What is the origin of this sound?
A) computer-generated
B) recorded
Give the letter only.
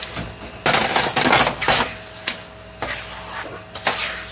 B